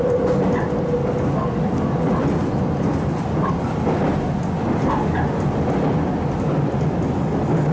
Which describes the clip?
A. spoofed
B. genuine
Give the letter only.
B